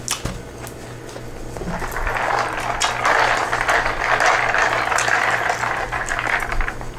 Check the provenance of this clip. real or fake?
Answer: real